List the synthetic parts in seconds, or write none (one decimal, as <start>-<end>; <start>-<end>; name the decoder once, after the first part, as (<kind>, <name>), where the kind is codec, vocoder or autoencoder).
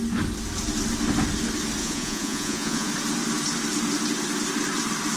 1.8-2.9 (vocoder, Vocos)